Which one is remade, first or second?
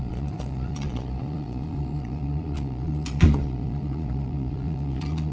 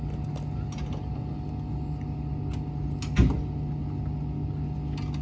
first